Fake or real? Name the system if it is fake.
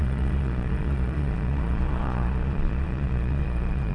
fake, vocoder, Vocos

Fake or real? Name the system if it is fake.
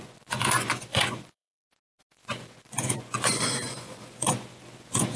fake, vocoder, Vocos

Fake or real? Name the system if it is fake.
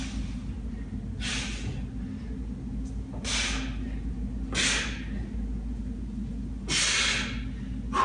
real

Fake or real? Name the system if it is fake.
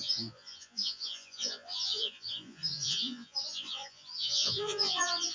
fake, vocoder, Vocos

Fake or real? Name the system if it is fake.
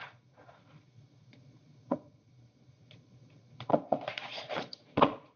fake, vocoder, Vocos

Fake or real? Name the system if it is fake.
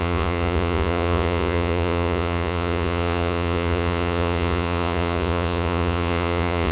fake, vocoder, Vocos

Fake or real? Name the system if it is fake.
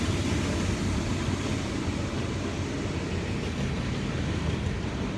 real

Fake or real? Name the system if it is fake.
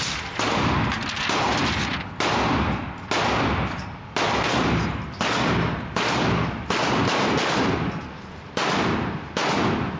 real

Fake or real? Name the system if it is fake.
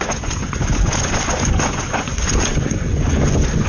fake, vocoder, Vocos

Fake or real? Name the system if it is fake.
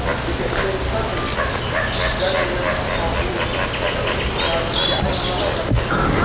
real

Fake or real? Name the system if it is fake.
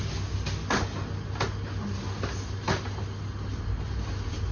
real